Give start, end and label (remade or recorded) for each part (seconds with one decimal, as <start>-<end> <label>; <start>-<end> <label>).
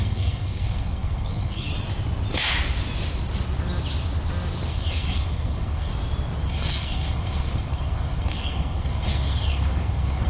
0.0-1.7 remade; 1.7-4.7 recorded; 4.7-5.9 remade; 5.9-6.5 recorded; 6.5-10.3 remade